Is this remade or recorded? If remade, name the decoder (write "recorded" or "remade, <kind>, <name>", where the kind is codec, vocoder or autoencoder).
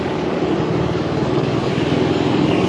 remade, codec, DAC